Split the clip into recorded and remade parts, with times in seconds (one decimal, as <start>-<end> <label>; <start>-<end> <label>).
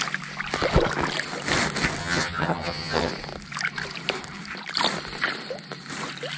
0.0-2.0 recorded; 2.0-3.1 remade; 3.1-6.4 recorded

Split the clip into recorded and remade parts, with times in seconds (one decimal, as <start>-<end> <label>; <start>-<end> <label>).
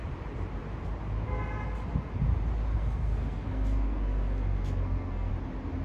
0.0-2.7 recorded; 2.7-5.3 remade; 5.3-5.8 recorded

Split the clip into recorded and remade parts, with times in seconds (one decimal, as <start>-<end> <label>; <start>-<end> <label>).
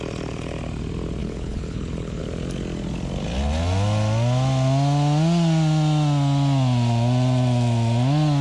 0.0-1.2 recorded; 1.2-2.2 remade; 2.2-8.4 recorded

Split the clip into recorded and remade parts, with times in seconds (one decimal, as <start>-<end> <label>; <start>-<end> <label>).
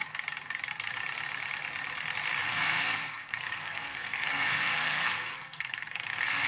0.0-2.5 recorded; 2.5-6.5 remade